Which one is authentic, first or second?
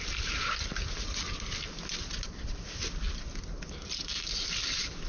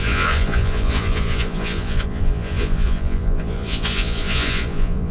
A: first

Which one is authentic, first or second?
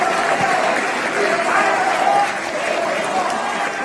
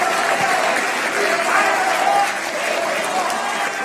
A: second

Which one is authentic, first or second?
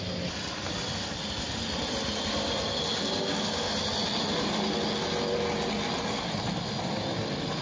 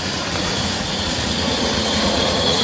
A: first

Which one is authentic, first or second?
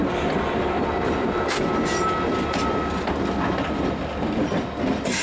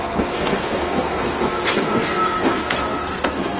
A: first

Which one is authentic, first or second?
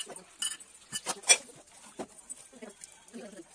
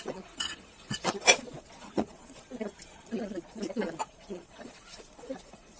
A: first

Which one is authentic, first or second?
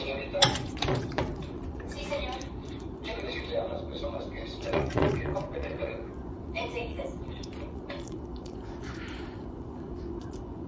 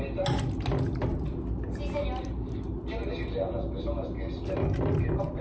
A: second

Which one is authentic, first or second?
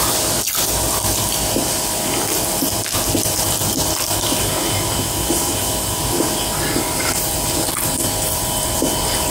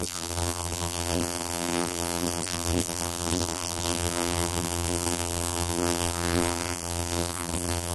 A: first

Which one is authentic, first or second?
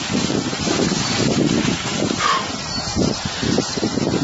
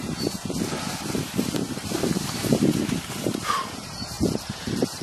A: first